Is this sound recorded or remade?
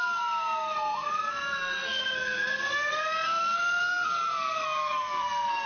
remade